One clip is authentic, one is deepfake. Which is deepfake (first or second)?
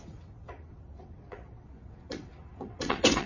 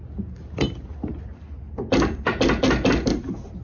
first